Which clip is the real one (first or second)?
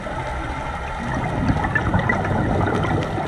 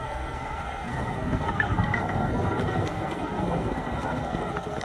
first